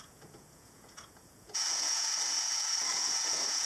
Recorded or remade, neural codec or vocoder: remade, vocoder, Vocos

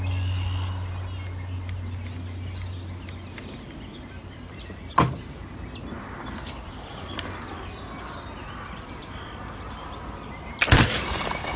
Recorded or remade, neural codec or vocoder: recorded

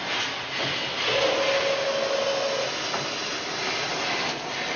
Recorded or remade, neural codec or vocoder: recorded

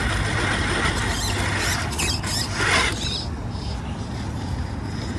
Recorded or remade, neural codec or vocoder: recorded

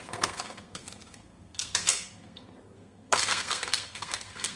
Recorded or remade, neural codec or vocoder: remade, codec, SNAC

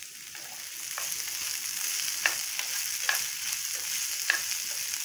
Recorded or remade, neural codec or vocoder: recorded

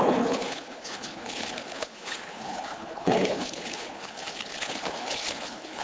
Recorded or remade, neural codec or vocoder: remade, codec, HILCodec